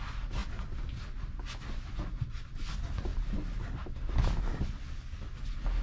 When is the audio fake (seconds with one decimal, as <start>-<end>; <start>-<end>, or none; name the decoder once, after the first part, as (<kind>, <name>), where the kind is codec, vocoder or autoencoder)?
none